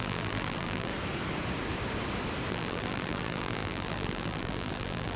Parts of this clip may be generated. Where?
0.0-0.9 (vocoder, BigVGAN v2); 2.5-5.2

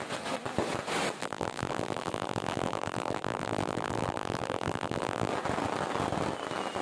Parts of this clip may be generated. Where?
1.2-5.3 (vocoder, BigVGAN v2)

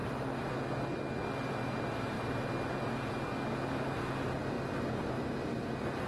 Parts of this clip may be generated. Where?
none

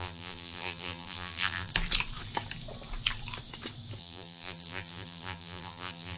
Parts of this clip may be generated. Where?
0.0-1.7 (vocoder, BigVGAN v2); 4.0-6.2

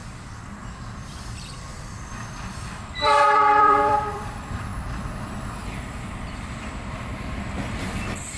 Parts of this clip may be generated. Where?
1.3-4.7 (vocoder, BigVGAN v2); 7.7-8.4

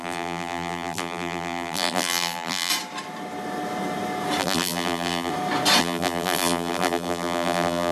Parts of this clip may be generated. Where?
0.0-2.7 (vocoder, BigVGAN v2); 4.4-5.3; 5.8-7.9

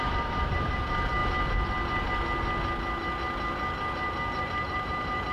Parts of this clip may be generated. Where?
0.0-1.2 (vocoder, BigVGAN v2); 4.4-5.3

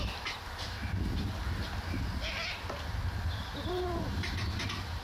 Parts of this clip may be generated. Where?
0.0-0.8 (vocoder, BigVGAN v2); 3.4-5.0